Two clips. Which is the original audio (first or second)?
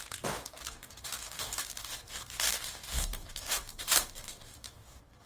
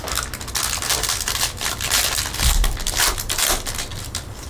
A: second